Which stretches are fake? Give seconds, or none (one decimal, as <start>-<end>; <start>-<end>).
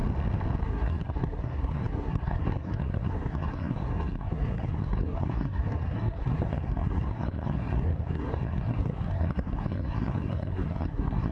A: 0.6-11.3